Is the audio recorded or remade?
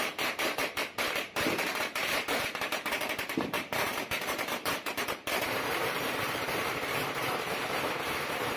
remade